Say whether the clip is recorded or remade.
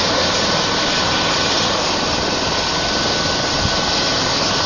recorded